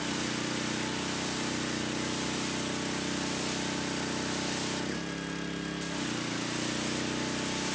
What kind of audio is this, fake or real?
real